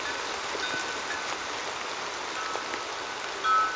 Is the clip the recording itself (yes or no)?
yes